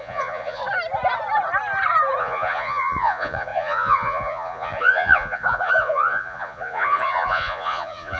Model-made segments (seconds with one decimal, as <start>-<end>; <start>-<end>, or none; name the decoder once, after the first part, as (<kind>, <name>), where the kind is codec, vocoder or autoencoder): 0.0-0.6 (vocoder, Vocos); 2.2-8.2